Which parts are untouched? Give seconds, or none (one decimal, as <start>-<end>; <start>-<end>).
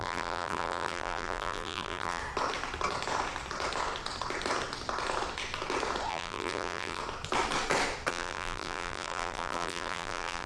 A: 2.2-6.1; 7.0-8.1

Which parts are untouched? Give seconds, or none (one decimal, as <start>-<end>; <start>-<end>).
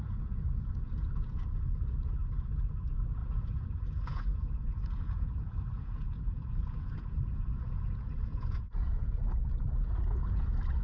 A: none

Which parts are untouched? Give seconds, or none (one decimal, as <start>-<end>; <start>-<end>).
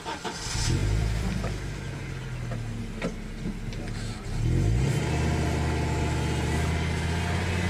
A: 0.0-0.8; 1.6-7.7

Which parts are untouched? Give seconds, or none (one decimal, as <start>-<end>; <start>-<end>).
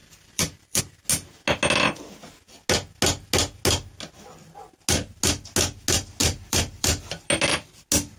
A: 0.8-6.2; 7.3-8.2